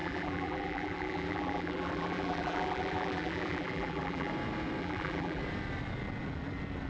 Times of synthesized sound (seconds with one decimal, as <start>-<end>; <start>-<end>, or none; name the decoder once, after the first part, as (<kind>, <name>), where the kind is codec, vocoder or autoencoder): 0.0-4.3 (vocoder, BigVGAN v2); 4.8-5.4